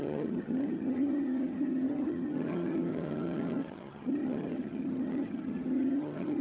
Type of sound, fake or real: fake